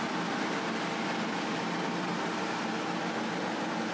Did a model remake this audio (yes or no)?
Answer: no